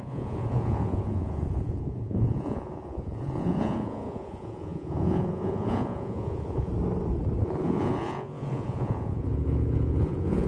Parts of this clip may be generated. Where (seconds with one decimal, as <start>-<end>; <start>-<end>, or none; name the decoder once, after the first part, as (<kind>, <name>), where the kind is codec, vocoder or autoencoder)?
0.0-6.7 (vocoder, Vocos); 7.4-10.5